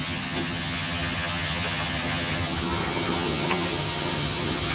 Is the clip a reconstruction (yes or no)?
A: yes